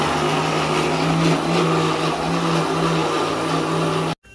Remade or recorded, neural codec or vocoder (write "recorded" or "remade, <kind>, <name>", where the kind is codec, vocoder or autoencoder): recorded